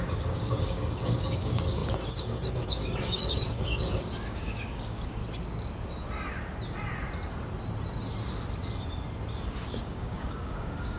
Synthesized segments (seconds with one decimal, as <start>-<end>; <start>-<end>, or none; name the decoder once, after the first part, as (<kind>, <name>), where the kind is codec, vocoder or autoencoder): 0.0-5.2 (codec, DAC); 9.8-11.0